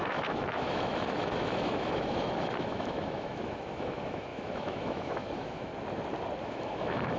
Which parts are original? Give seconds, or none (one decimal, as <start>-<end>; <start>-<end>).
5.7-6.4